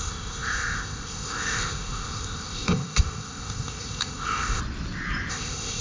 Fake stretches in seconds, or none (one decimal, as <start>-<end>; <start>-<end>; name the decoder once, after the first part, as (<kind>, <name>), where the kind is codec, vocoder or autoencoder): 0.0-4.6 (codec, ZipCodec); 5.3-5.8